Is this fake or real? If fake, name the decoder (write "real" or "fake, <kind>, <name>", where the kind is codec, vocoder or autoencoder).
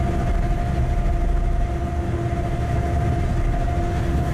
real